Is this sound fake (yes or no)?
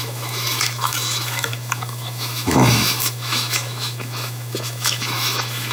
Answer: yes